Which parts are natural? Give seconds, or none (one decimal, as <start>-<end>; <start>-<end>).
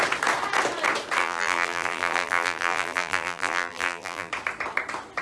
0.0-1.2; 4.3-5.2